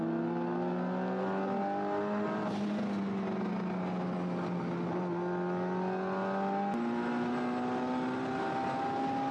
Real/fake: real